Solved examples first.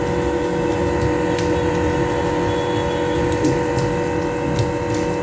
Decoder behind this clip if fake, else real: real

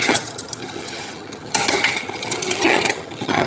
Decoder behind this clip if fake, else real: fake, vocoder, HiFi-GAN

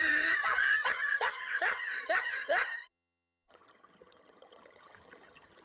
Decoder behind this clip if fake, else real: fake, vocoder, HiFi-GAN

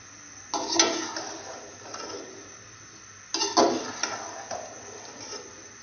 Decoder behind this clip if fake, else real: real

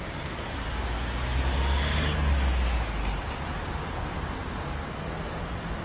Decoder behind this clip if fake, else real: real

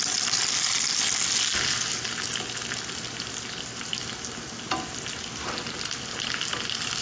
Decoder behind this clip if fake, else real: real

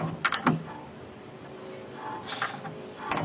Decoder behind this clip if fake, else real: real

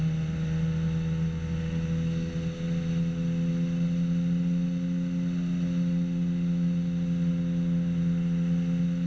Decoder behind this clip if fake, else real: real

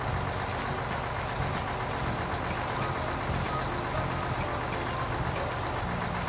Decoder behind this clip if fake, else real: real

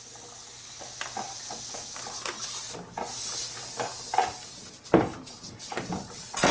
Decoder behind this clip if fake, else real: real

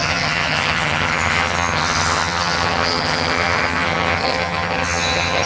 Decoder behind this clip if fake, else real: fake, vocoder, HiFi-GAN